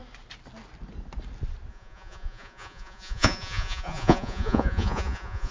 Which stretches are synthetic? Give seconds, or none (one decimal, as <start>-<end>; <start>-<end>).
1.7-5.5